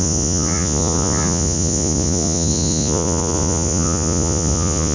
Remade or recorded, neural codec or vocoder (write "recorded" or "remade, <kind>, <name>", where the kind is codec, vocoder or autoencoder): remade, vocoder, Vocos